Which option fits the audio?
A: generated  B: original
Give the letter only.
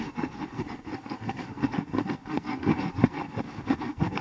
A